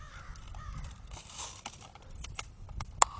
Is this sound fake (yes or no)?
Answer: no